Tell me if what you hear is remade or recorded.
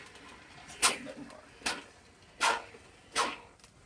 recorded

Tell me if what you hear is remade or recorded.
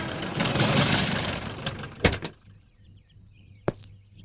remade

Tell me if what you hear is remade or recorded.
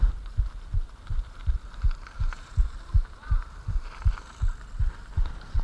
remade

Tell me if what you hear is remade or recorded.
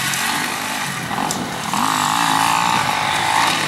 recorded